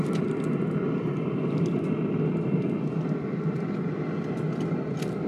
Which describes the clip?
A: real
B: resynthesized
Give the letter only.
A